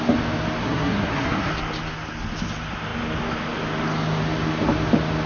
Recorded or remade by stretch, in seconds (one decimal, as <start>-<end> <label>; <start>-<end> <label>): 0.0-0.6 recorded; 0.6-1.5 remade; 1.5-5.3 recorded